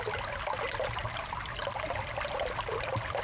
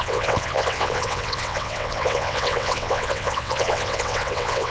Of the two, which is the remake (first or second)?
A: second